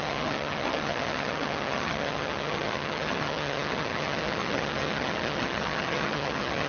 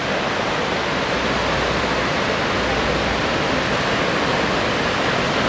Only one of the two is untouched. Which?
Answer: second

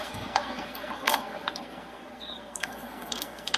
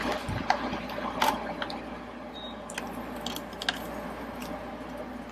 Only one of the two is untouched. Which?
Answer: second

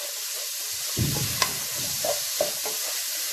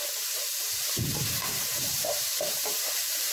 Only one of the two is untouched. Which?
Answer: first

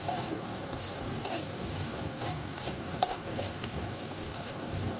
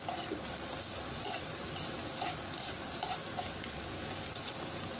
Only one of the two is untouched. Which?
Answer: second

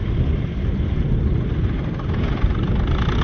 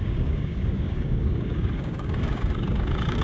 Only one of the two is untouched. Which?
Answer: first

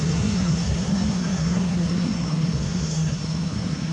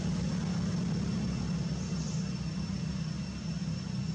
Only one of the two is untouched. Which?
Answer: second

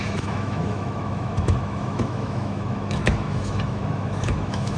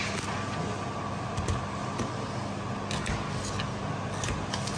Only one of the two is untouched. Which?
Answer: second